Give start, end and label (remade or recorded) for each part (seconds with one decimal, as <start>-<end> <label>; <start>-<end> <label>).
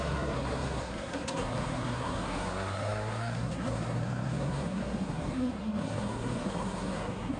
0.0-7.4 remade